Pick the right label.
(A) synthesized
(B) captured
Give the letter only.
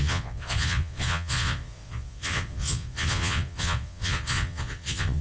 A